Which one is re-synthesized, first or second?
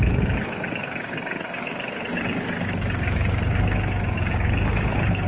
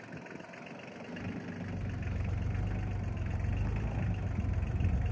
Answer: first